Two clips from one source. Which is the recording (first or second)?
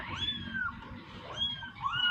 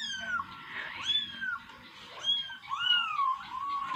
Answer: second